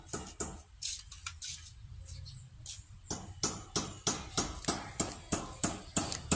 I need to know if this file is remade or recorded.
recorded